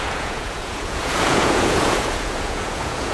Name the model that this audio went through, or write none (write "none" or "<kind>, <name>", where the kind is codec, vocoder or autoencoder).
vocoder, Vocos